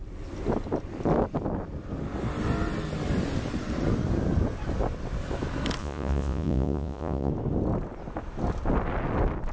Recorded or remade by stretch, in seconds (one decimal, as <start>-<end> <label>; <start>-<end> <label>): 0.0-5.8 recorded; 5.8-7.3 remade; 7.3-9.5 recorded